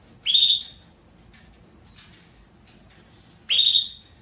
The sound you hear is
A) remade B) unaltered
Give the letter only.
B